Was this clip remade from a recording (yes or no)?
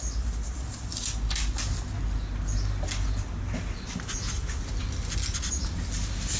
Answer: no